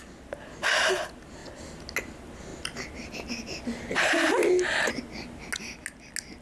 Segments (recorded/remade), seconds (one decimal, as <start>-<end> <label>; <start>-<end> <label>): 0.0-6.4 recorded